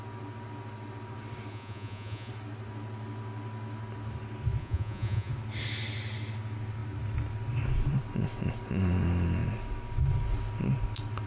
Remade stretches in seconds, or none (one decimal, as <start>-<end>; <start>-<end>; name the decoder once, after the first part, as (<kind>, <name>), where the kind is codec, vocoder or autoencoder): 1.5-2.3 (vocoder, Vocos); 4.6-5.3